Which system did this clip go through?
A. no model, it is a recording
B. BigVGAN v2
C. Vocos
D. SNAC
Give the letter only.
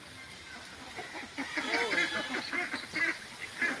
A